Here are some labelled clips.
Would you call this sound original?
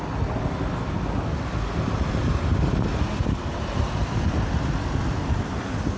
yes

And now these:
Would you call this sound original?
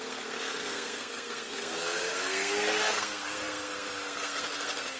no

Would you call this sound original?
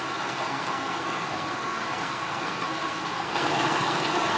no